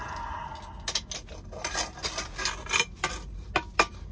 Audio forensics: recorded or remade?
recorded